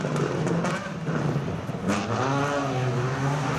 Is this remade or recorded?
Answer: recorded